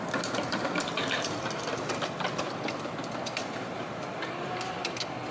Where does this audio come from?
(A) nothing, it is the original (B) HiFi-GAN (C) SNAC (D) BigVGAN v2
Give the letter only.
D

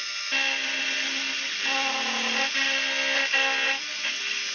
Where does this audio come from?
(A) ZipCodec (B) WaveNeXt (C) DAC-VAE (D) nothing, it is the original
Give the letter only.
D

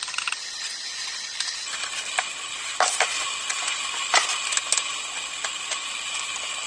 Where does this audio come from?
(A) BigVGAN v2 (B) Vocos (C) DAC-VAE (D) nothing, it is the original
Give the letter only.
D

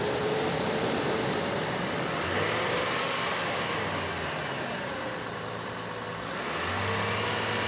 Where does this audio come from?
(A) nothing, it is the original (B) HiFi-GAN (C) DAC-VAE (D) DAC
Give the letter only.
A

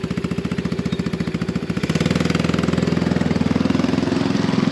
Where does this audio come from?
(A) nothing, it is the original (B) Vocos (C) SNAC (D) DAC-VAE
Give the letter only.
A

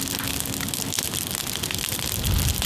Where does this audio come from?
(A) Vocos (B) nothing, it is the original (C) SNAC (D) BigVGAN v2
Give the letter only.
B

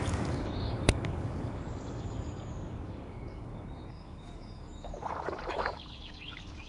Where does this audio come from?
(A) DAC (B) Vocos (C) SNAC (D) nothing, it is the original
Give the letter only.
A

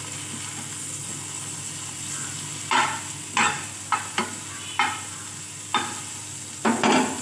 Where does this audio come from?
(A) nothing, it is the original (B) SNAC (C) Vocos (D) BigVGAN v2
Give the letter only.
A